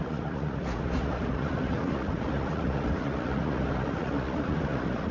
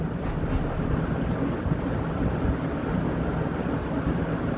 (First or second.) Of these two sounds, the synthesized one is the first